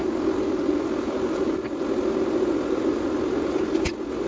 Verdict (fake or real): real